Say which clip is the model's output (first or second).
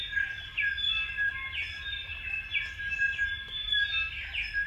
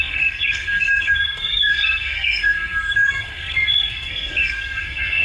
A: second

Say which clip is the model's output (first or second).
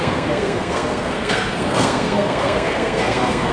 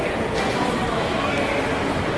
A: first